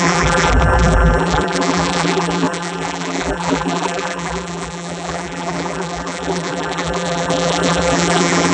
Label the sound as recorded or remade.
remade